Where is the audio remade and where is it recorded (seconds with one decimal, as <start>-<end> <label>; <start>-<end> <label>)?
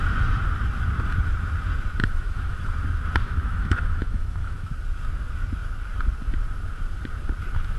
0.0-2.0 recorded; 2.0-2.6 remade; 2.6-3.2 recorded; 3.2-4.7 remade; 4.7-7.8 recorded